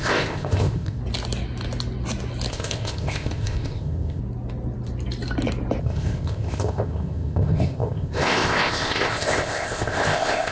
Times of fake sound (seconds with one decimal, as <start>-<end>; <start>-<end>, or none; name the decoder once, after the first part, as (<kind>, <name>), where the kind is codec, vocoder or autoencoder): 0.0-1.0 (codec, ZipCodec); 2.5-4.2; 5.8-10.5